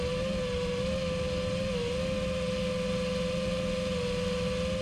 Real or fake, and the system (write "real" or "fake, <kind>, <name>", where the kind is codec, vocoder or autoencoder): real